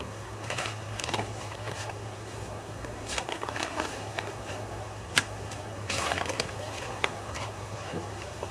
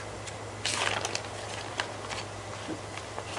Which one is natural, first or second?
second